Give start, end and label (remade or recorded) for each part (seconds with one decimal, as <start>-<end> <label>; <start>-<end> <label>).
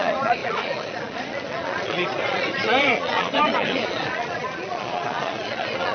0.0-5.9 remade